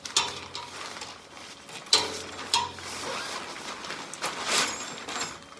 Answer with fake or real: real